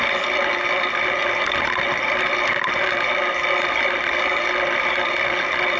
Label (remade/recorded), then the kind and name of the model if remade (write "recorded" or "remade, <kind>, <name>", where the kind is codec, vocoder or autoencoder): recorded